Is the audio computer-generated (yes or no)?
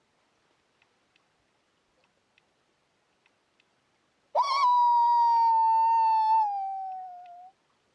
no